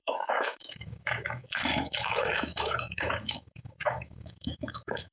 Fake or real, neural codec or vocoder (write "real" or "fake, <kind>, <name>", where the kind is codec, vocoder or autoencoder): fake, autoencoder, DAC-VAE